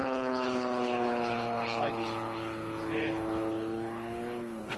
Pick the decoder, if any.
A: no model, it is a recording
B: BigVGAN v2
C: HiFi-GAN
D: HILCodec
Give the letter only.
D